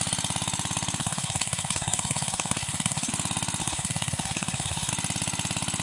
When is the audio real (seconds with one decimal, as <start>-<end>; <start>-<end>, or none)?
0.0-1.0; 3.1-3.6; 4.9-5.8